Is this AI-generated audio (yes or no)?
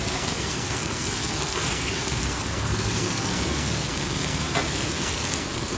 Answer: yes